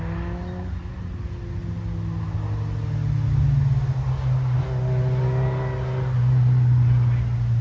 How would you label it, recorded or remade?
recorded